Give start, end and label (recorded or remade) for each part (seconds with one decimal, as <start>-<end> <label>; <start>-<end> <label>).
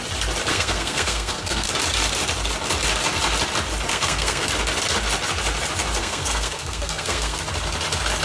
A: 0.0-0.5 recorded; 0.5-1.7 remade; 1.7-3.9 recorded; 3.9-4.5 remade; 4.5-6.0 recorded; 6.0-7.4 remade; 7.4-8.2 recorded